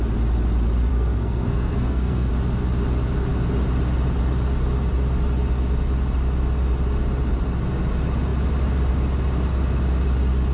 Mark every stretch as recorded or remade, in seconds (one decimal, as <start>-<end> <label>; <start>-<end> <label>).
0.0-0.9 recorded; 0.9-2.3 remade; 2.3-10.5 recorded